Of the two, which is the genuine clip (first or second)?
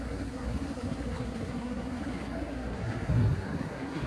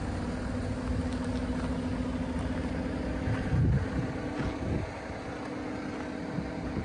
second